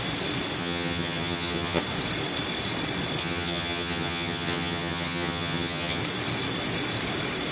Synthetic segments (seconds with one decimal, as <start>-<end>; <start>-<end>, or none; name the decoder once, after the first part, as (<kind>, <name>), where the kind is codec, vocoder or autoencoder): 0.6-1.8 (vocoder, HiFi-GAN); 3.2-6.0